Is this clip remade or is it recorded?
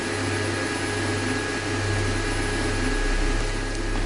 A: recorded